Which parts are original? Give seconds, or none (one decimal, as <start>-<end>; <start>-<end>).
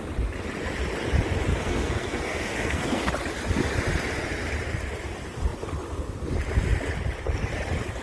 0.0-1.5; 3.1-8.0